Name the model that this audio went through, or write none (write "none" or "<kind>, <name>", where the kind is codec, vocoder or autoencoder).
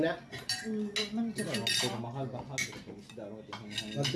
none